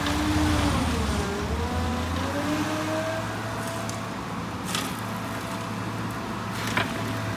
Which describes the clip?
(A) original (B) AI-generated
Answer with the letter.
A